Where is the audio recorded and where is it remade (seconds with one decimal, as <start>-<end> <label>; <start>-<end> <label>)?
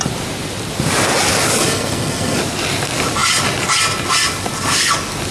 0.0-1.6 recorded; 1.6-2.4 remade; 2.4-5.3 recorded